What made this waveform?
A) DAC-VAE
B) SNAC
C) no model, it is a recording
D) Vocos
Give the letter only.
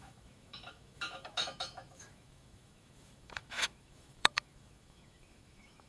A